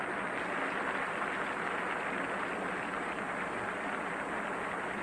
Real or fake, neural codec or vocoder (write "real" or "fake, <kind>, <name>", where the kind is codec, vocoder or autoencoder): real